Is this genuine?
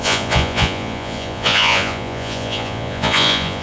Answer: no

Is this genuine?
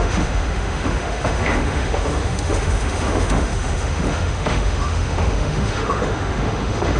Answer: no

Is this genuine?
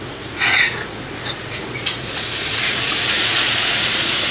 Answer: no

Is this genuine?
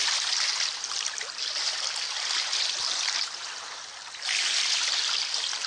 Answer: yes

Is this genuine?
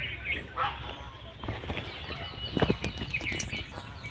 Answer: yes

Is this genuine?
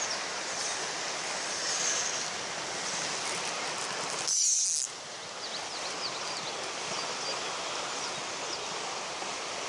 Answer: yes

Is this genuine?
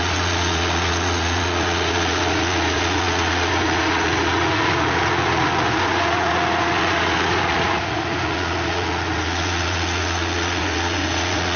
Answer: no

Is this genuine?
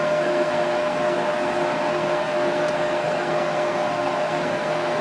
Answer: no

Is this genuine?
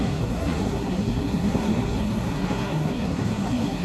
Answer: no